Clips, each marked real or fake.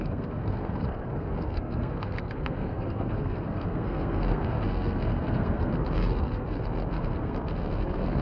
fake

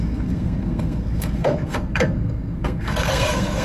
fake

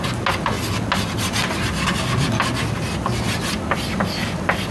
real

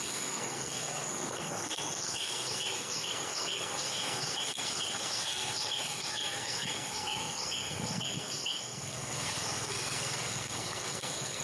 fake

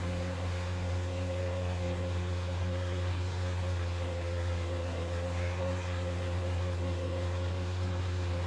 fake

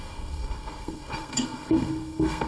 fake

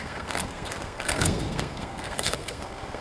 fake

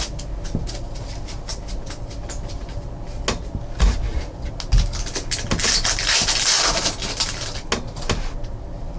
real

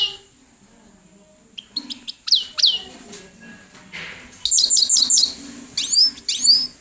real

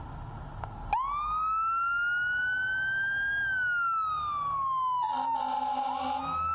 real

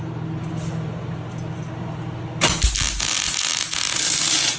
real